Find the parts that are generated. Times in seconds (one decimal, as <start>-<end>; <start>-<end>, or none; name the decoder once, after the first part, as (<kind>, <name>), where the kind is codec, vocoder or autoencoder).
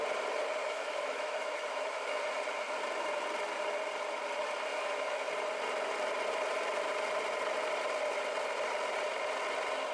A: 0.6-2.2 (autoencoder, DAC-VAE); 4.7-5.3